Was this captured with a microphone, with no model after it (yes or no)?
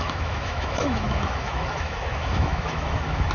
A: no